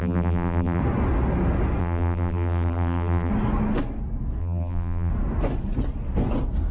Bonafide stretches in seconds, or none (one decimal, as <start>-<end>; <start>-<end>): 0.8-1.8; 3.3-4.4; 5.1-6.7